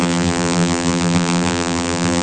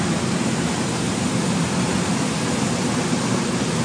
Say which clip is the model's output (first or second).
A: first